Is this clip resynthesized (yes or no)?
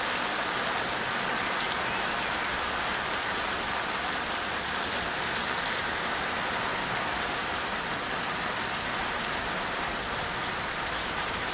no